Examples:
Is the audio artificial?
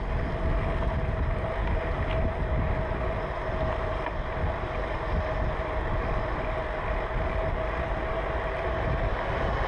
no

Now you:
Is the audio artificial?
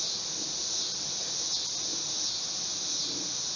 no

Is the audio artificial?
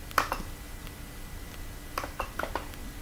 no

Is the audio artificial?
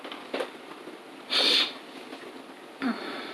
no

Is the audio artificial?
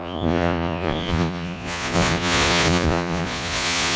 yes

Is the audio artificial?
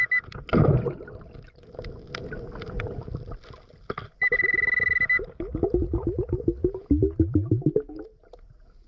no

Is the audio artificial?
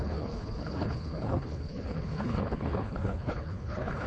yes